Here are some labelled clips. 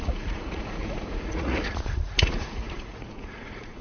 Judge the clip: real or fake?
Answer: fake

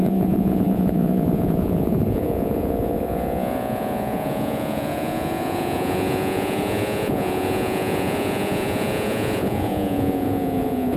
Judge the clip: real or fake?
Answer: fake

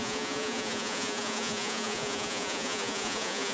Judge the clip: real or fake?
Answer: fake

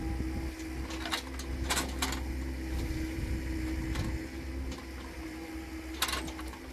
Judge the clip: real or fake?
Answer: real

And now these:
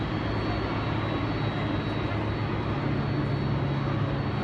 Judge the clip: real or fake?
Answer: real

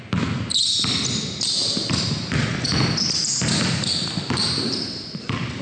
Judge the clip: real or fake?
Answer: real